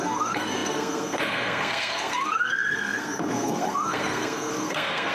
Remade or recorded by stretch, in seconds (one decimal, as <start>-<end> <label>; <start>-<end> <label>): 0.0-5.1 remade